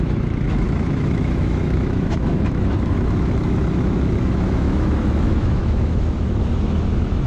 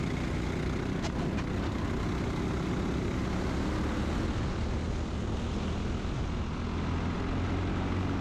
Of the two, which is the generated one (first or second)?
first